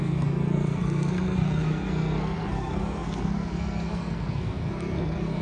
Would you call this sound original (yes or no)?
no